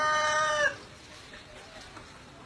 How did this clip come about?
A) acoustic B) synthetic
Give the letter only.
A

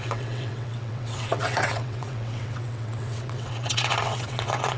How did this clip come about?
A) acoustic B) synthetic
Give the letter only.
B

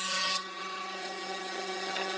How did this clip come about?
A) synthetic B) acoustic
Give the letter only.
A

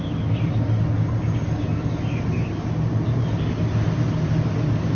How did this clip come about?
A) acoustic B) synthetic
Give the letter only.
A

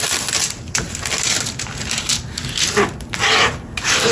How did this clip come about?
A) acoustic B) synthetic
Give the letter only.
A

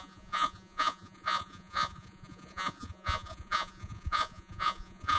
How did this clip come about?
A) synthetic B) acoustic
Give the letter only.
A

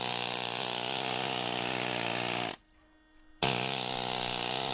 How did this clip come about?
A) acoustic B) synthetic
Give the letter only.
A